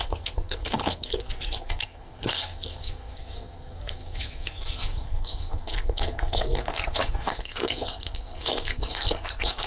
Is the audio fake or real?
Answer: fake